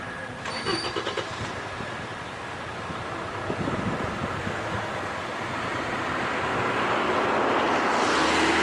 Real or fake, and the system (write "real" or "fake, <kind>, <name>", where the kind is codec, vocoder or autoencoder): real